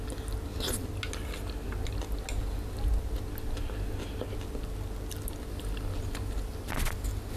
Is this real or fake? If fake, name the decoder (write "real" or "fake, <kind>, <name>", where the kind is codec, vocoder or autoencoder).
real